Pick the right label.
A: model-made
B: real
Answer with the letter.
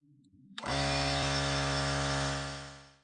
A